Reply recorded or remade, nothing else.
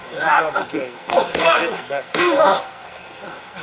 remade